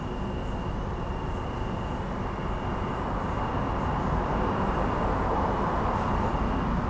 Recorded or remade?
recorded